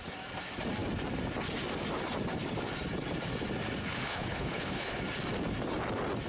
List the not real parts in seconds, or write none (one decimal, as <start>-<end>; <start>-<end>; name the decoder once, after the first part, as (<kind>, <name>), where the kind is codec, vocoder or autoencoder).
3.8-5.0 (codec, HILCodec)